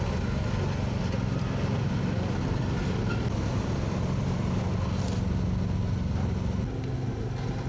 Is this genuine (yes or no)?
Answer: yes